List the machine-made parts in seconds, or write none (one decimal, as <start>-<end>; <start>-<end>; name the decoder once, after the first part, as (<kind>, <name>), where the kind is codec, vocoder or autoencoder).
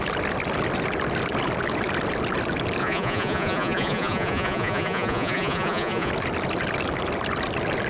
2.8-6.1 (vocoder, Vocos)